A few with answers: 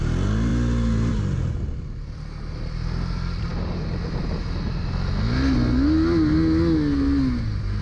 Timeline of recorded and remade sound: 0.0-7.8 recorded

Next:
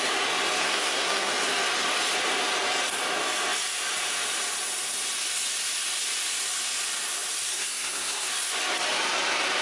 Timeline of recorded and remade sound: 0.0-0.6 recorded; 0.6-1.3 remade; 1.3-7.5 recorded; 7.5-8.3 remade; 8.3-9.6 recorded

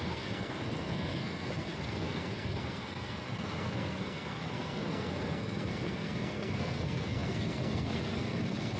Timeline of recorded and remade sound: 0.0-8.8 remade

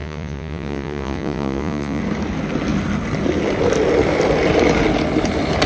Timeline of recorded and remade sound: 0.0-2.0 remade; 2.0-5.7 recorded

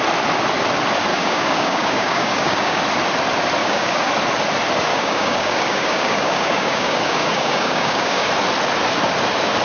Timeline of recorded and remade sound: 0.0-1.1 recorded; 1.1-2.8 remade; 2.8-3.6 recorded; 3.6-4.1 remade; 4.1-4.9 recorded; 4.9-8.3 remade; 8.3-9.6 recorded

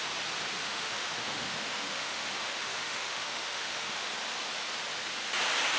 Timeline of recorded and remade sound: 0.0-0.6 recorded; 0.6-4.1 remade; 4.1-5.8 recorded

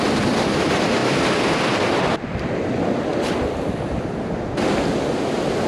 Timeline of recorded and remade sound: 0.0-5.7 recorded

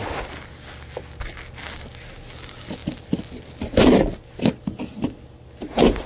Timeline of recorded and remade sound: 0.0-6.1 recorded